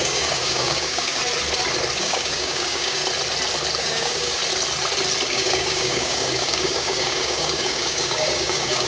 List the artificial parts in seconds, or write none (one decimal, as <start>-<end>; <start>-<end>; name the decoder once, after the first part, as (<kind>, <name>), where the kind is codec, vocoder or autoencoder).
0.0-1.2 (codec, DAC); 2.0-3.0; 3.8-4.4; 5.3-8.9